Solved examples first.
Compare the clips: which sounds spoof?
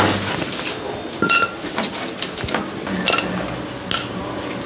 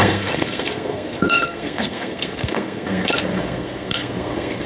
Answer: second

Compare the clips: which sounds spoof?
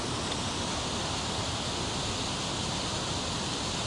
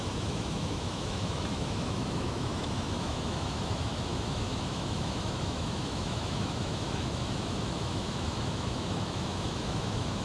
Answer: second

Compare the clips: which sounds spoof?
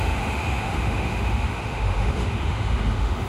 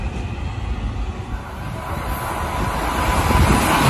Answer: first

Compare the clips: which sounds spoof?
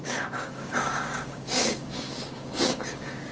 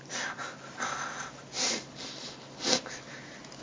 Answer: first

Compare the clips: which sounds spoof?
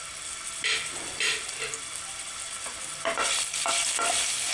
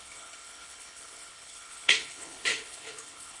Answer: second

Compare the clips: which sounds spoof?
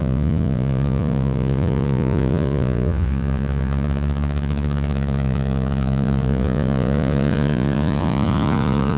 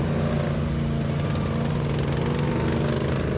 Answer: first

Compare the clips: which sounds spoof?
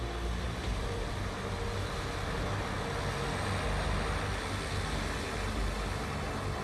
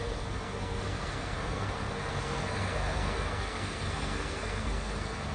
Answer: second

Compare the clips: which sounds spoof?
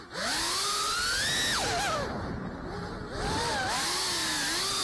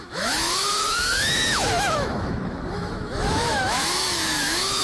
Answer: second